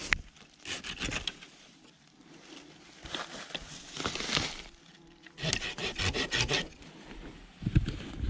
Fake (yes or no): no